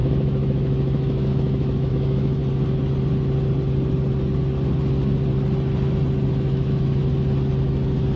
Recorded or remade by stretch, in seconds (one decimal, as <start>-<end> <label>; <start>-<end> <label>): 0.0-2.4 remade; 2.4-6.3 recorded; 6.3-7.0 remade; 7.0-8.2 recorded